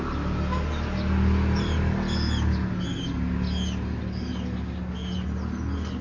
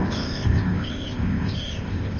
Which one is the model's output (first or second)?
second